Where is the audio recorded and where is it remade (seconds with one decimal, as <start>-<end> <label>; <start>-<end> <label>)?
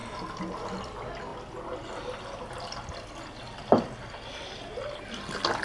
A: 0.0-5.6 recorded